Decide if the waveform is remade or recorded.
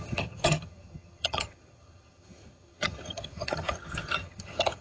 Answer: remade